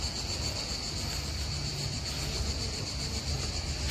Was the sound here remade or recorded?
recorded